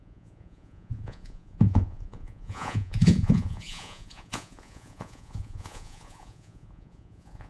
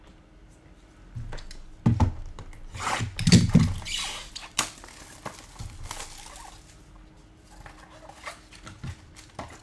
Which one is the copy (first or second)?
first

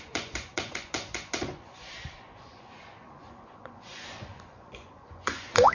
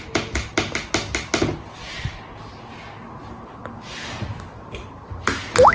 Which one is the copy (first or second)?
first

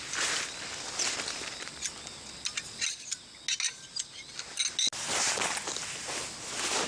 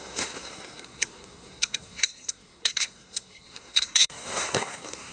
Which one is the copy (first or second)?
second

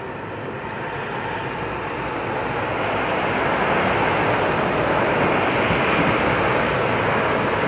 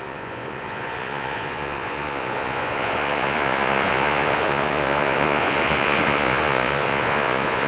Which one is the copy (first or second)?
second